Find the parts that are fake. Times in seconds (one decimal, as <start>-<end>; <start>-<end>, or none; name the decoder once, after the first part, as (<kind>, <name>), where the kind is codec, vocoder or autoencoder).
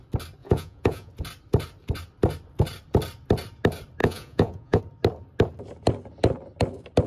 0.4-1.1 (vocoder, Vocos); 4.0-4.8